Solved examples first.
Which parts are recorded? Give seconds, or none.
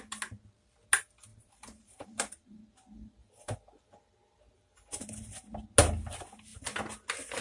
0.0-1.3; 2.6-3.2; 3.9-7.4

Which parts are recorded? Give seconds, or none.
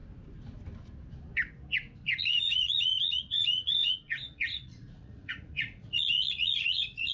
0.0-2.2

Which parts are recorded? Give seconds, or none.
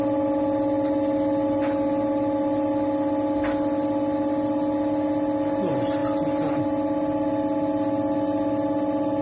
0.0-9.2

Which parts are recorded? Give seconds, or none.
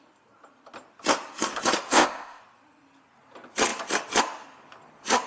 0.0-1.9; 2.4-5.3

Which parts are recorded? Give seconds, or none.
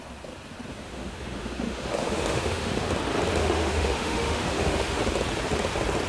0.0-0.7; 2.9-3.4; 5.0-6.1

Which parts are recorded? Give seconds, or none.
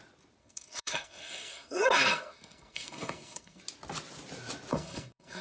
0.0-0.4; 3.6-4.7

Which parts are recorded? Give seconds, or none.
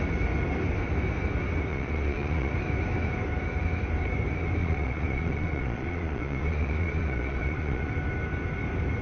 0.0-1.7; 2.5-4.6; 7.9-9.0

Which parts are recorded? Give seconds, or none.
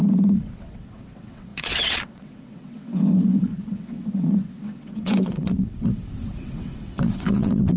none